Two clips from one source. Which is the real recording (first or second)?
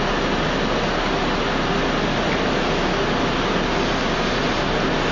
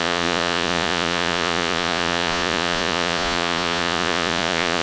first